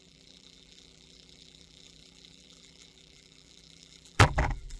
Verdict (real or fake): fake